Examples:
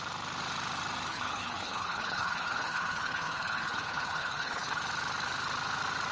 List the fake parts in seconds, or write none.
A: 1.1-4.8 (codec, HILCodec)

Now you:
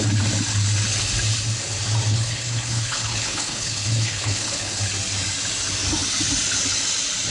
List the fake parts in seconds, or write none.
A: 2.1-4.8 (codec, HILCodec)

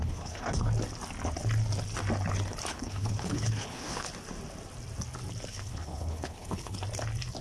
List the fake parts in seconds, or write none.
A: 0.0-0.7 (codec, HILCodec); 2.7-4.1; 5.5-6.8

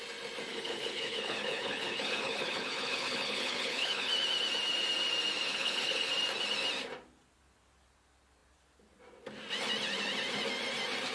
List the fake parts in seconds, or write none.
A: 0.5-4.1 (codec, HILCodec); 5.5-6.1

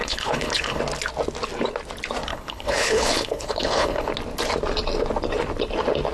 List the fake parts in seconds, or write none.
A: 0.0-0.8 (codec, HILCodec); 2.3-4.1

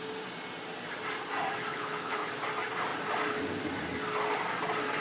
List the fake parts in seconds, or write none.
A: 1.7-2.3 (codec, HILCodec)

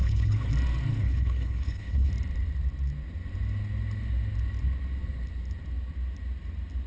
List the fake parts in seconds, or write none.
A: 0.0-0.5 (codec, HILCodec); 0.9-2.1